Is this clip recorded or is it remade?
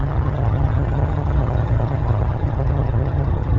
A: remade